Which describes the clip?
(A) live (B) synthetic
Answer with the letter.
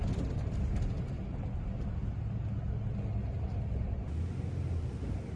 A